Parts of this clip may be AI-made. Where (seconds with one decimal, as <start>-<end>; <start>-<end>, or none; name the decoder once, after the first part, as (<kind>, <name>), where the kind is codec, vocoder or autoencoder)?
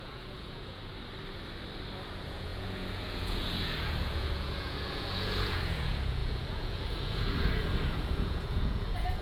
0.0-0.9 (vocoder, Vocos); 2.1-9.2